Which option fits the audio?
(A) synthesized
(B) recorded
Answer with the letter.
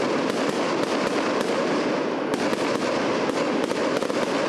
B